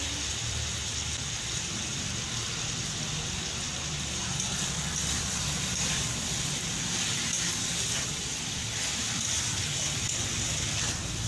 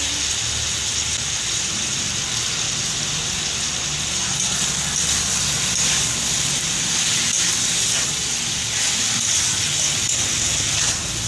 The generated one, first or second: first